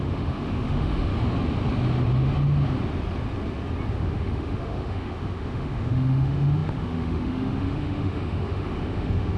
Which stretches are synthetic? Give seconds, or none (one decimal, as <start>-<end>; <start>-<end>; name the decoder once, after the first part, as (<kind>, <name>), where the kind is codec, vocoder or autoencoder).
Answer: 0.0-1.1 (autoencoder, DAC-VAE); 3.9-9.4